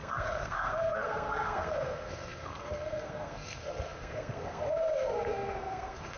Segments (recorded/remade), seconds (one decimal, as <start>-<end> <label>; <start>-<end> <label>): 0.0-6.2 remade